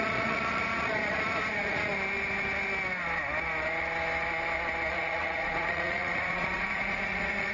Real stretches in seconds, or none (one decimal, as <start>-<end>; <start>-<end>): 1.9-4.9

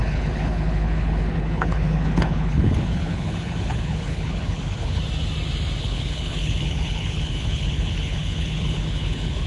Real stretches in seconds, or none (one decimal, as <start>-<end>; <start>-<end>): 5.0-5.8

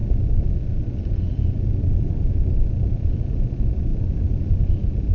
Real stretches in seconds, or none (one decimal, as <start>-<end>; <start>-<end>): 0.0-5.1